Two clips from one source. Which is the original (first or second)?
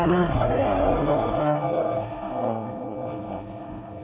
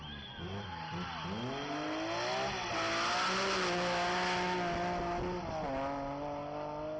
second